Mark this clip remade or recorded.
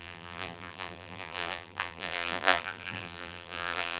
remade